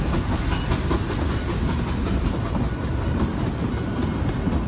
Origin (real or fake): real